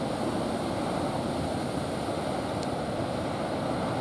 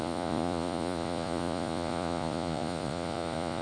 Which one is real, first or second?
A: first